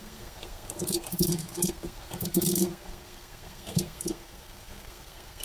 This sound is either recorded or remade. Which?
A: remade